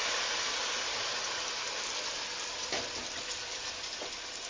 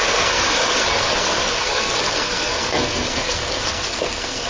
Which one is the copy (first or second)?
second